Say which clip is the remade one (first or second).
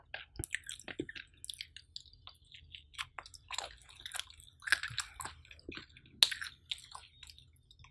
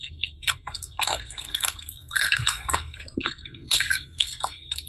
second